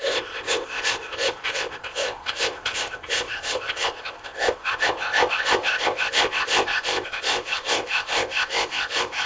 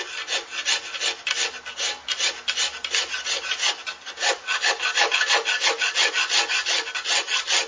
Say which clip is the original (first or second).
second